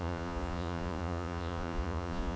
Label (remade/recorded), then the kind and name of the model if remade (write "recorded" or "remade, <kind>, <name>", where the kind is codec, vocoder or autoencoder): remade, vocoder, Vocos